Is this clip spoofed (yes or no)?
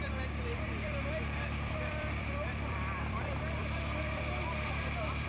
yes